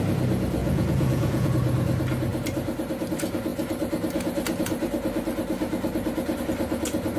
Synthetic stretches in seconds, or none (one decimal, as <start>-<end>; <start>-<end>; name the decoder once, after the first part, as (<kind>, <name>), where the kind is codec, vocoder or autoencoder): 0.6-1.5 (vocoder, Vocos)